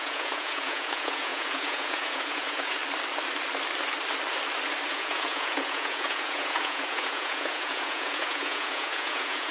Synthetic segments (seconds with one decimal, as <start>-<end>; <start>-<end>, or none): 0.0-2.8; 4.9-9.5